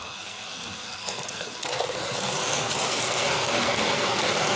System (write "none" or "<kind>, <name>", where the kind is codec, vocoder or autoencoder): codec, SNAC